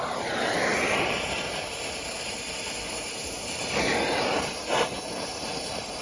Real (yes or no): no